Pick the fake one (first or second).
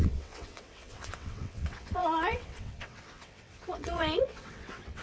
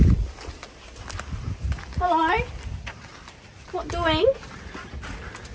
first